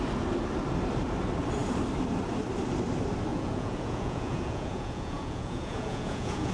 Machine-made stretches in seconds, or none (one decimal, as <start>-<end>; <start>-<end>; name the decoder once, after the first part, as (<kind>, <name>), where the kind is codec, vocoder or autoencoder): 3.3-6.5 (vocoder, Vocos)